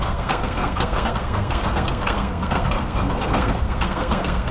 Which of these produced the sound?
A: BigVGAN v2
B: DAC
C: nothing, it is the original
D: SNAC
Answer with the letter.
D